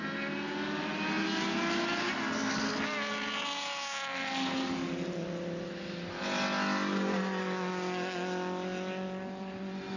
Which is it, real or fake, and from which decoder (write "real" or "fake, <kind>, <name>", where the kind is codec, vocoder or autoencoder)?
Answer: real